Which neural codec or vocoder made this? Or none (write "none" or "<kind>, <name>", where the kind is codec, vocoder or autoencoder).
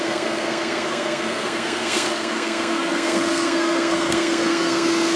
codec, SNAC